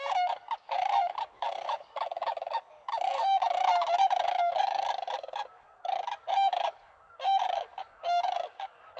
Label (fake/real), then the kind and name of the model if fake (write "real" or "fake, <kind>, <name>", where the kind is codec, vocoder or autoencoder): fake, codec, DAC